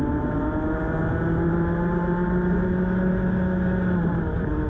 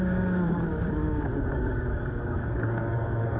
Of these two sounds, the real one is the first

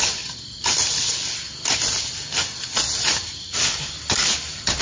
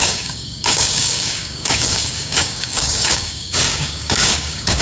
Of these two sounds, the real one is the first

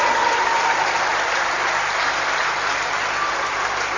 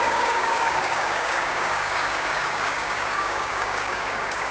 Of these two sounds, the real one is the first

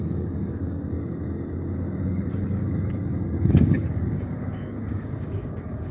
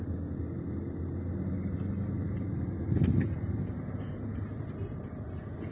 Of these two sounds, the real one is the second